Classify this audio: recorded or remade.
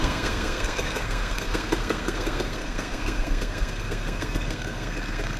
remade